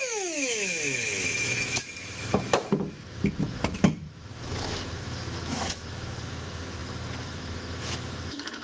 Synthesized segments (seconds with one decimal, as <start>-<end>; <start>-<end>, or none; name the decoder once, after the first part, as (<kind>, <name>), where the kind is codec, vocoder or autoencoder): 0.0-8.6 (autoencoder, DAC-VAE)